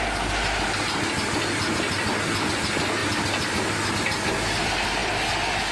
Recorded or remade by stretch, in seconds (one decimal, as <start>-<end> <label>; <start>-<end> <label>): 0.0-5.7 recorded